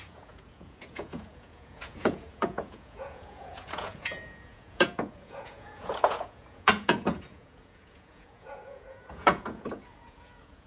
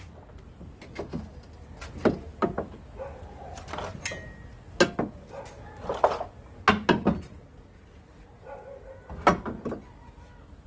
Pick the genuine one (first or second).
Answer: second